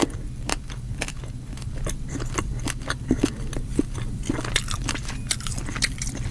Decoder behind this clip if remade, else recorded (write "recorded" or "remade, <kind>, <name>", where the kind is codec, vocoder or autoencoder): remade, vocoder, BigVGAN v2